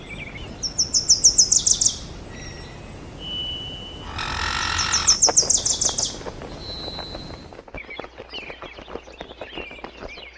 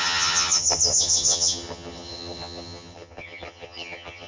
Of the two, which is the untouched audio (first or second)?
first